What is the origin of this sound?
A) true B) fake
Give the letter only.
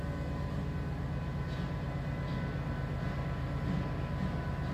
A